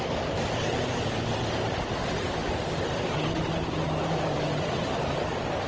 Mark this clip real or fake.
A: real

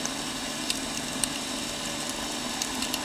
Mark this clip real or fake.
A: real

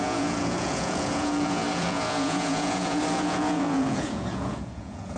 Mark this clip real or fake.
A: fake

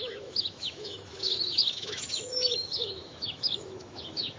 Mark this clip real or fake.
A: fake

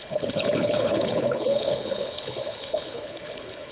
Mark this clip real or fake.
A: fake